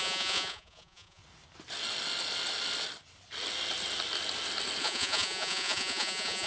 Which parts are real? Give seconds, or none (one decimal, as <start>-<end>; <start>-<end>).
1.2-4.8